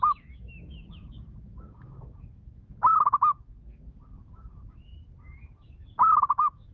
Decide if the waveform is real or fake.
fake